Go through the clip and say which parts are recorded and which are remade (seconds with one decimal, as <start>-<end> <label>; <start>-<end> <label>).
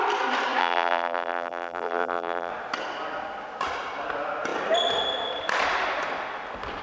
0.0-0.6 recorded; 0.6-2.5 remade; 2.5-6.8 recorded